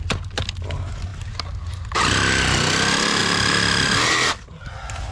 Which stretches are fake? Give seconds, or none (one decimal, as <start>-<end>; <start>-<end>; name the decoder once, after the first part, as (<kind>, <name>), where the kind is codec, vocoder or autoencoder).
none